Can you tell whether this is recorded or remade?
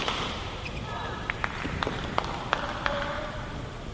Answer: remade